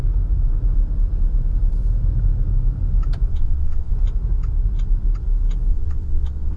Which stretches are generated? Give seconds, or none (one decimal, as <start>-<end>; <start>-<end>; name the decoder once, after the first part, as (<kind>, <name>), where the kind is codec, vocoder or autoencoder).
3.3-3.9 (vocoder, WaveNeXt); 5.7-6.6